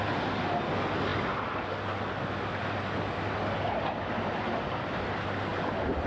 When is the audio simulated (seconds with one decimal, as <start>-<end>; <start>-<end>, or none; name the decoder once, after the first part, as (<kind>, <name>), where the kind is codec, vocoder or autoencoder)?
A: none